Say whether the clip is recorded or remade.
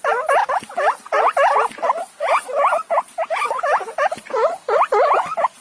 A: recorded